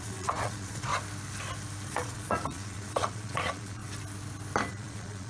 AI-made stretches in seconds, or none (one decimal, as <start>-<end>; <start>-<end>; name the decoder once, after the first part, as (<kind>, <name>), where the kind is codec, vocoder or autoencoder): 0.0-0.9 (vocoder, Vocos); 1.9-3.8; 4.7-5.3